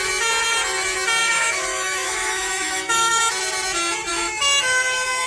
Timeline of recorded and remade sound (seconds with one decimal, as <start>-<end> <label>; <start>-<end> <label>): 0.0-1.2 recorded; 1.2-3.2 remade; 3.2-4.1 recorded; 4.1-5.3 remade